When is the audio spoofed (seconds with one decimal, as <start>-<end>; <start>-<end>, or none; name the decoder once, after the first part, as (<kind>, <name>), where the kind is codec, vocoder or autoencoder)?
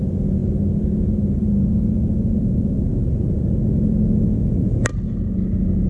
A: none